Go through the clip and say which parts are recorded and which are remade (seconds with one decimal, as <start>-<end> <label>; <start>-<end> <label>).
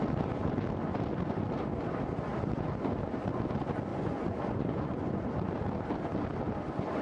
0.0-3.9 recorded; 3.9-5.2 remade; 5.2-7.0 recorded